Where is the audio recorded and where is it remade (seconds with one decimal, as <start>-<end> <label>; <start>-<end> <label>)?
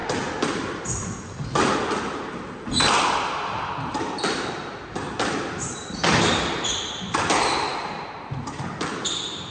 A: 0.0-9.5 recorded